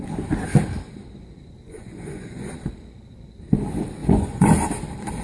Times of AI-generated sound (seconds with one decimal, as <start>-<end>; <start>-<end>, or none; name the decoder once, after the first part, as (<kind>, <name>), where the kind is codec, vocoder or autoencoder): 1.6-2.5 (vocoder, Vocos); 4.0-4.5